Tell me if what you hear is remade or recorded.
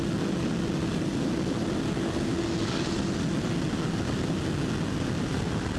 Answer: recorded